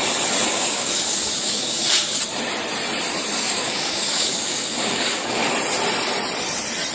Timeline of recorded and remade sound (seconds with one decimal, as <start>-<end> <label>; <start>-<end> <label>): 0.0-0.5 recorded; 0.5-2.2 remade; 2.2-3.4 recorded; 3.4-5.4 remade; 5.4-6.9 recorded

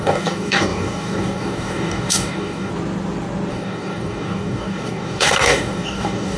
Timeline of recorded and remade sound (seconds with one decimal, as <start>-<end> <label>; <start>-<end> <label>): 0.0-2.7 remade; 2.7-3.5 recorded; 3.5-6.4 remade

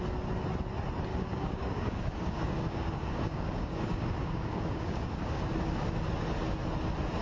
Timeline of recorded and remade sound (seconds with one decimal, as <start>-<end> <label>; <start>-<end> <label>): 0.0-1.1 recorded; 1.1-5.4 remade; 5.4-7.2 recorded